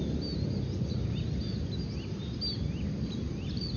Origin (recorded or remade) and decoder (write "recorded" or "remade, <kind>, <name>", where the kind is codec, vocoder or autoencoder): recorded